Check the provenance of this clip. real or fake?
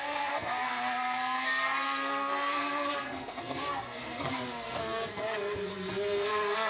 fake